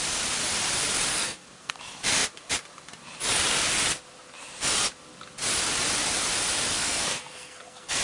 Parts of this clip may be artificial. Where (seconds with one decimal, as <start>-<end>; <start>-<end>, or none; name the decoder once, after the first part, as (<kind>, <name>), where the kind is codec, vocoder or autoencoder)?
1.1-1.7 (codec, SNAC); 6.7-8.0